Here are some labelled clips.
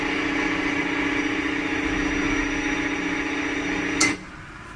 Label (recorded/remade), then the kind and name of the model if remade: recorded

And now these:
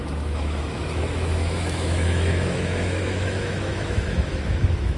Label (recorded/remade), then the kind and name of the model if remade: remade, autoencoder, DAC-VAE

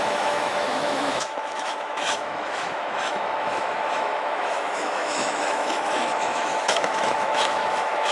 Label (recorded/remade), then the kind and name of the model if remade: remade, autoencoder, DAC-VAE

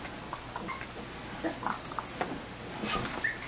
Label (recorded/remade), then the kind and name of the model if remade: recorded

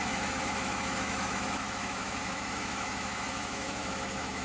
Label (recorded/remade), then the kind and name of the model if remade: remade, autoencoder, DAC-VAE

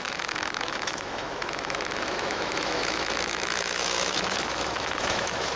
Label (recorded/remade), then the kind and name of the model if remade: remade, autoencoder, DAC-VAE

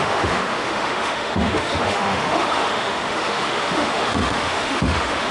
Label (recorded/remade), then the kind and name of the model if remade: remade, autoencoder, DAC-VAE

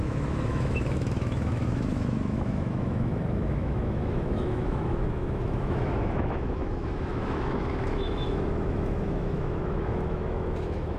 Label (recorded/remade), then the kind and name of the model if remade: remade, autoencoder, DAC-VAE